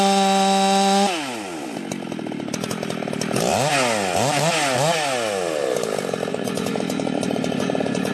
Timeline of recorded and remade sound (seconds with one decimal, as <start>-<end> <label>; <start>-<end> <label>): 0.0-6.3 recorded; 6.3-8.1 remade